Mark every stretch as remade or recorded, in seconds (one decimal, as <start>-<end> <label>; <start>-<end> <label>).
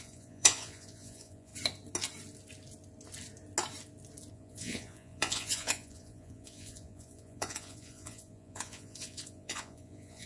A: 0.0-1.5 remade; 1.5-4.3 recorded; 4.3-10.3 remade